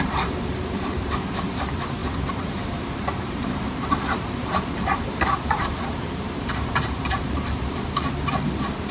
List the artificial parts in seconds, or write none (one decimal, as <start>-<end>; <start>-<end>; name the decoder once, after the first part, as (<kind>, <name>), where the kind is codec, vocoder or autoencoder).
0.0-8.9 (vocoder, BigVGAN v2)